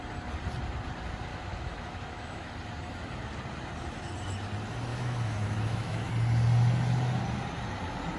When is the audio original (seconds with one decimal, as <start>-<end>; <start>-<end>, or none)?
0.0-1.3; 2.5-4.9; 6.1-8.2